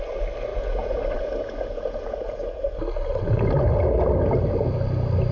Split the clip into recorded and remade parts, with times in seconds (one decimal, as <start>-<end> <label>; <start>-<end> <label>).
0.0-0.5 recorded; 0.5-2.7 remade; 2.7-5.3 recorded